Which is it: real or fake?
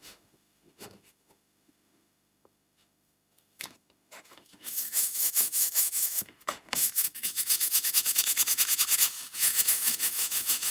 fake